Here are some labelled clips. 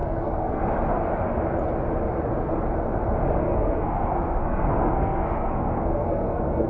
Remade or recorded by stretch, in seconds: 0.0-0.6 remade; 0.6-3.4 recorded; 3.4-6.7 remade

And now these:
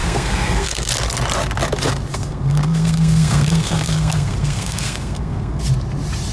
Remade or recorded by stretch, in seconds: 0.0-0.9 remade; 0.9-2.1 recorded; 2.1-5.6 remade; 5.6-6.3 recorded